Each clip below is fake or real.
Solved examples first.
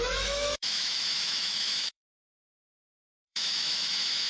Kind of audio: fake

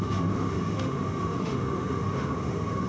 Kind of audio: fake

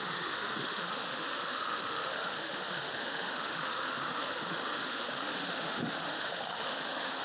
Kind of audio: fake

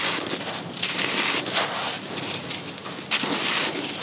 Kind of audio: real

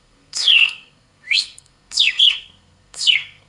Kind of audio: fake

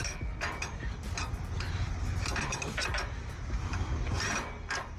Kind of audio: fake